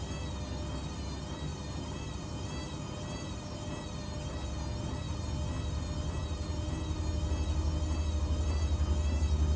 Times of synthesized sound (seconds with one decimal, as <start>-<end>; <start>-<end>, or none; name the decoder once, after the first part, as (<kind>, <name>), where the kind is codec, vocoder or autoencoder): 1.5-2.3 (vocoder, BigVGAN v2)